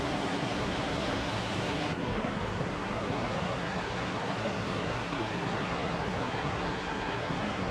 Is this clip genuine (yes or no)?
no